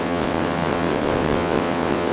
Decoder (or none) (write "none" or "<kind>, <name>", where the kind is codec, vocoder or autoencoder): vocoder, WaveNeXt